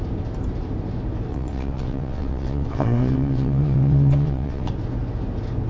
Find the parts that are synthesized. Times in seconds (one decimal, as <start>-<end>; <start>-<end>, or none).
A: 1.3-4.7